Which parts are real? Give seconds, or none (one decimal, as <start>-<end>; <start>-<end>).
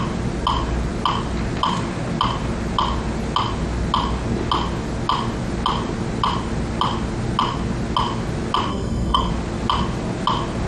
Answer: 0.0-8.7; 9.3-10.7